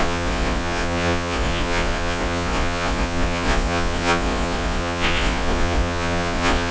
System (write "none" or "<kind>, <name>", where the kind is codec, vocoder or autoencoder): vocoder, Vocos